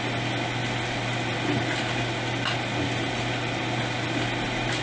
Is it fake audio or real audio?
real